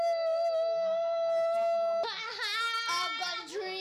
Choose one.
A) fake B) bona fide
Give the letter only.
B